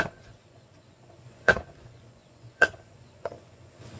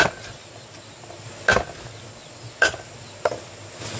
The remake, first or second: first